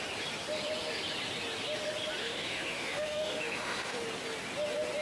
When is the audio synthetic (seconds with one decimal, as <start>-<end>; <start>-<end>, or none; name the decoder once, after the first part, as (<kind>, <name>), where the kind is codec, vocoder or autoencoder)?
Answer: 2.2-4.0 (autoencoder, DAC-VAE)